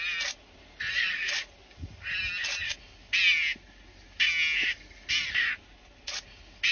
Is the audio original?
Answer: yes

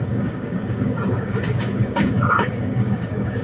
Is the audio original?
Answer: no